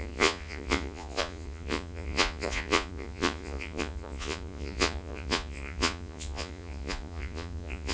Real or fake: fake